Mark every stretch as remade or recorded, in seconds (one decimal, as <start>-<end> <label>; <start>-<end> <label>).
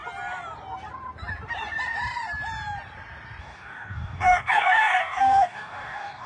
0.0-3.4 recorded; 3.4-6.3 remade